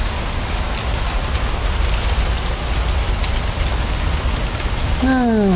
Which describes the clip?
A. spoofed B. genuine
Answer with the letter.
B